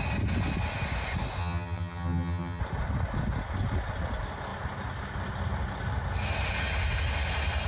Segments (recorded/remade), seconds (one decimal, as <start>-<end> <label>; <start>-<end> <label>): 0.0-1.4 recorded; 1.4-2.6 remade; 2.6-7.7 recorded